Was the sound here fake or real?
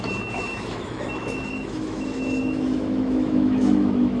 fake